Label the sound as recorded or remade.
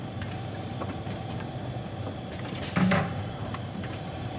remade